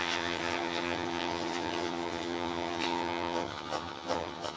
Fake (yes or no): yes